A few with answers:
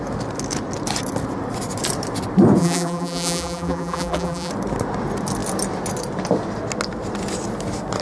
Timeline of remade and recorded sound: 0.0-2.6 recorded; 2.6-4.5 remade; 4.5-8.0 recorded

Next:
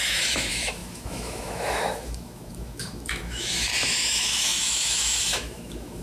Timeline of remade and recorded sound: 0.0-6.0 remade

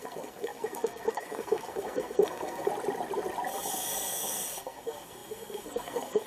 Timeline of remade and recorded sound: 0.0-2.7 remade; 2.7-3.7 recorded; 3.7-6.3 remade

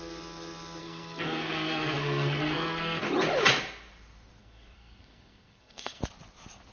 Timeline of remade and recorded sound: 0.0-0.8 recorded; 0.8-3.0 remade; 3.0-4.4 recorded; 4.4-6.0 remade; 6.0-6.7 recorded

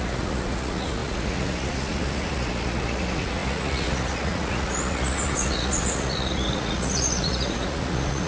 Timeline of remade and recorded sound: 0.0-8.3 remade

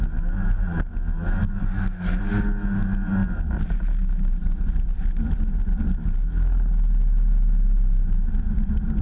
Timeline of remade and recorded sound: 0.0-1.4 recorded; 1.4-2.2 remade; 2.2-9.0 recorded